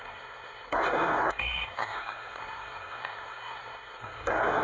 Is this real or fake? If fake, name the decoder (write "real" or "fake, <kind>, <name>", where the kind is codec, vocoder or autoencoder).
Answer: fake, codec, SNAC